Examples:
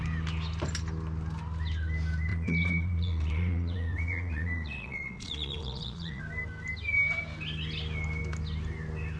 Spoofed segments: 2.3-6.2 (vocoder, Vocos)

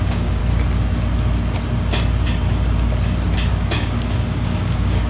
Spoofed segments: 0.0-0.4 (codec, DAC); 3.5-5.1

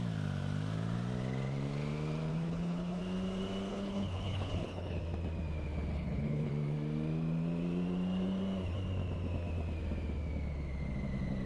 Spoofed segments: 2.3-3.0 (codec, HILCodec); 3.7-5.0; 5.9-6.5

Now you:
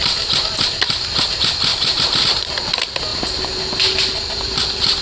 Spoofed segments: 1.7-2.5 (vocoder, BigVGAN v2)

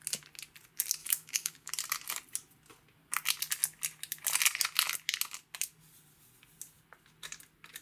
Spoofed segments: 1.0-1.7 (autoencoder, DAC-VAE)